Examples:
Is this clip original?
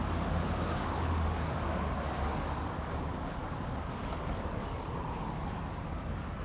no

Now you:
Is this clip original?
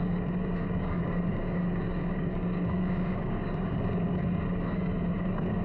no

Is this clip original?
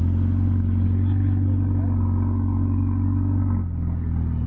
yes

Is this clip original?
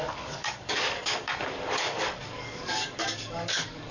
no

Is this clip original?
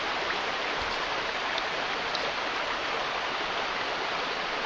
yes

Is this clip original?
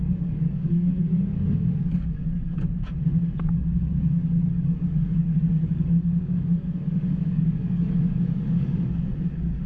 no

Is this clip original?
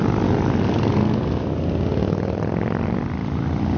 yes